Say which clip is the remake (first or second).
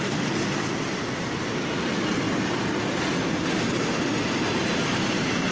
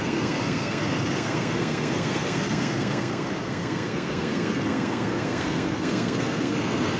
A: second